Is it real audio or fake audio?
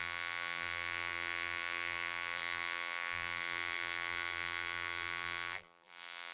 fake